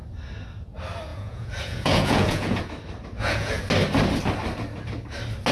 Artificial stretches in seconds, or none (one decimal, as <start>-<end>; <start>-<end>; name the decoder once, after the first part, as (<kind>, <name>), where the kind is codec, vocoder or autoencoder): 1.1-2.6 (vocoder, Vocos); 3.2-3.7